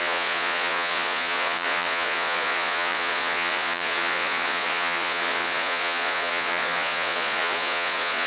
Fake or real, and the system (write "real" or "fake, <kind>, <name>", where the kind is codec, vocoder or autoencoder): fake, vocoder, Vocos